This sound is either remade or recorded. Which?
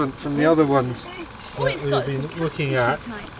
recorded